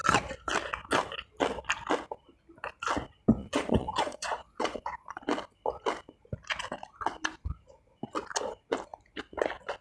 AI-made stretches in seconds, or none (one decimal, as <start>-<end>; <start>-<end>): 3.4-5.2